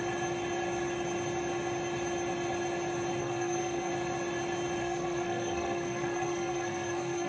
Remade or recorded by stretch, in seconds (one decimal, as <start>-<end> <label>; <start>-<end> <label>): 0.0-3.2 recorded; 3.2-3.9 remade; 3.9-4.8 recorded; 4.8-7.3 remade